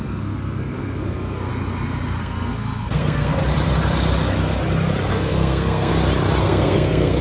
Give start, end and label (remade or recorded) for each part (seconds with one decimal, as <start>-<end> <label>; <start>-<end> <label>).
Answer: 0.0-1.5 remade; 1.5-2.2 recorded; 2.2-3.4 remade; 3.4-5.1 recorded; 5.1-5.9 remade; 5.9-6.4 recorded; 6.4-7.2 remade